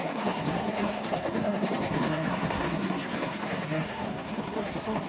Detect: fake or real fake